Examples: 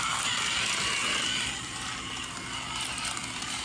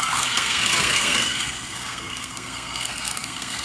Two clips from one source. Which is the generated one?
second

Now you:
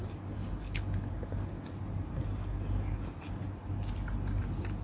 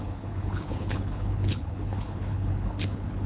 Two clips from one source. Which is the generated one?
second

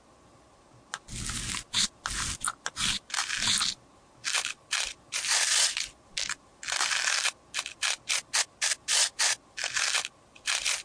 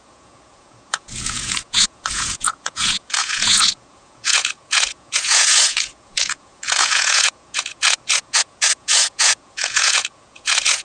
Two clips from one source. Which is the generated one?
second